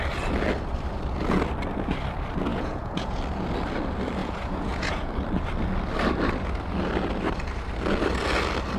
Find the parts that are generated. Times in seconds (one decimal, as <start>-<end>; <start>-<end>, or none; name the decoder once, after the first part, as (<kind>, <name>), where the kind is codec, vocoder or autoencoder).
2.5-3.2 (vocoder, Vocos); 4.2-5.1